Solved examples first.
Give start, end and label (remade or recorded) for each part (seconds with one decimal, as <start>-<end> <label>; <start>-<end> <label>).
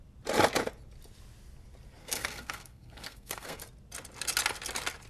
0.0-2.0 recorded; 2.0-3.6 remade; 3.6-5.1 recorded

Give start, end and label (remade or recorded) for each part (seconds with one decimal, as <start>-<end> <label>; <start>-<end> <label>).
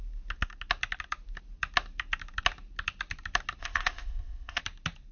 0.0-3.6 recorded; 3.6-4.6 remade; 4.6-5.1 recorded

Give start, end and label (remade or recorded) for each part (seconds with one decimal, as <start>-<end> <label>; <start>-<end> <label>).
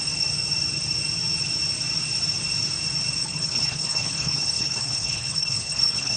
0.0-3.2 recorded; 3.2-6.2 remade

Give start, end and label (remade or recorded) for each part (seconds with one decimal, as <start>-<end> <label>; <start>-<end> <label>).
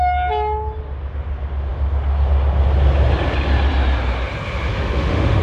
0.0-4.7 recorded; 4.7-5.4 remade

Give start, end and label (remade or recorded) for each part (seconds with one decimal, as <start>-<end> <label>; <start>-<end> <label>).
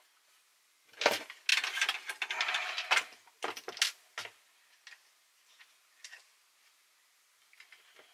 0.0-8.1 recorded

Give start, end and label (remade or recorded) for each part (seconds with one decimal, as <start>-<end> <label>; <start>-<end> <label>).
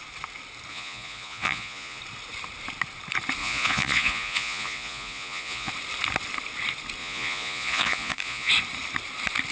0.0-0.7 recorded; 0.7-2.0 remade; 2.0-3.4 recorded; 3.4-5.7 remade; 5.7-7.0 recorded; 7.0-8.5 remade; 8.5-9.5 recorded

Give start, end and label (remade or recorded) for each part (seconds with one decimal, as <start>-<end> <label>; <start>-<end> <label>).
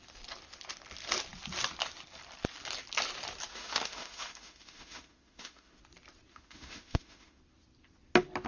0.0-3.5 recorded; 3.5-5.8 remade; 5.8-6.3 recorded; 6.3-7.4 remade; 7.4-8.5 recorded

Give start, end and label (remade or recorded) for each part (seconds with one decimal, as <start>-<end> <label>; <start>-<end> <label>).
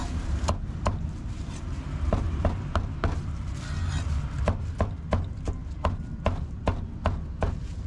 0.0-2.7 remade; 2.7-7.9 recorded